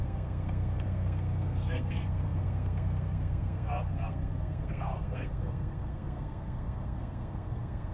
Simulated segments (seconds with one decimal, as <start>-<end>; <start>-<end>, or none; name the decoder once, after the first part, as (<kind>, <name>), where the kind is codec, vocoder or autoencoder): 0.0-7.9 (codec, SNAC)